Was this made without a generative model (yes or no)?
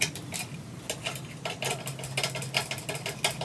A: yes